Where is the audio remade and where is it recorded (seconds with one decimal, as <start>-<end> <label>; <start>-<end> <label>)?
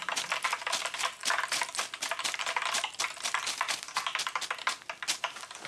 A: 0.0-5.7 recorded